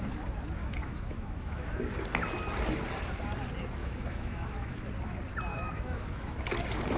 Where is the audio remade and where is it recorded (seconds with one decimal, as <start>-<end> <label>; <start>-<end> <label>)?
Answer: 0.0-0.6 recorded; 0.6-1.8 remade; 1.8-3.8 recorded; 3.8-4.8 remade; 4.8-5.5 recorded; 5.5-6.4 remade; 6.4-7.0 recorded